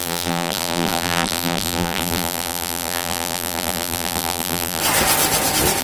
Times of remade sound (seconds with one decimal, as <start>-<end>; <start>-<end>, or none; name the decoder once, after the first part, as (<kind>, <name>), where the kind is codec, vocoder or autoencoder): 0.0-4.8 (vocoder, BigVGAN v2)